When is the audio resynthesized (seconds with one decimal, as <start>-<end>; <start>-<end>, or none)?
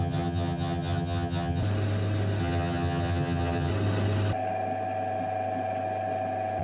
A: 0.0-1.6; 2.4-3.7